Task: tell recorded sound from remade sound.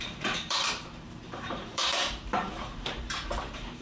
remade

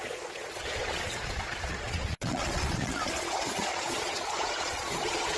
remade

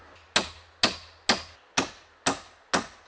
recorded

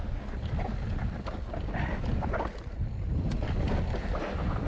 recorded